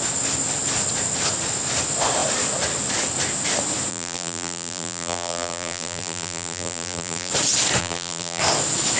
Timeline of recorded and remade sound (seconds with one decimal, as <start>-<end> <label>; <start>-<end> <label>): 0.0-3.9 recorded; 3.9-7.3 remade; 7.3-7.8 recorded; 7.8-8.4 remade; 8.4-9.0 recorded